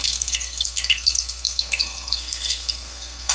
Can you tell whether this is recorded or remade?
remade